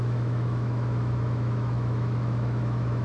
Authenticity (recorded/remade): remade